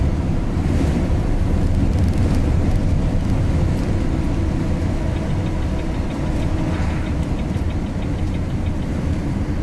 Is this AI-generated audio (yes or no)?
no